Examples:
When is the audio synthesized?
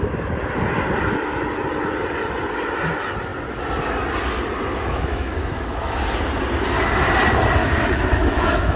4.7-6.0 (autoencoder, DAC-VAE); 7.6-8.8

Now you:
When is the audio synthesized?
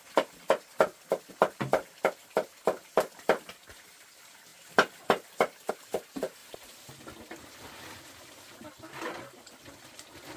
none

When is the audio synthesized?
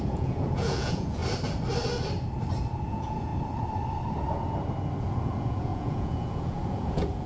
0.0-1.2 (vocoder, Vocos); 2.9-3.3; 5.0-7.3